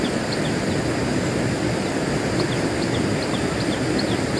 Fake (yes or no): no